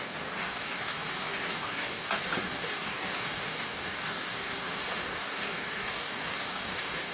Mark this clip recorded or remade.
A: remade